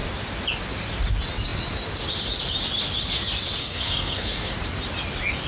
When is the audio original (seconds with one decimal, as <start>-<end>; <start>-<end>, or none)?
0.0-3.6; 4.5-5.5